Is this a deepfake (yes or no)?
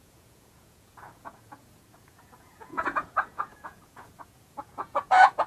yes